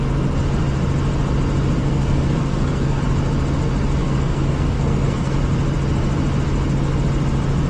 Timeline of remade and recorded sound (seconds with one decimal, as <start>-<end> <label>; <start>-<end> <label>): 0.0-1.8 recorded; 1.8-3.0 remade; 3.0-4.0 recorded; 4.0-5.4 remade; 5.4-7.7 recorded